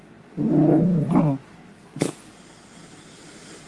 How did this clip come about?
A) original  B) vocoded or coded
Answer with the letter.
A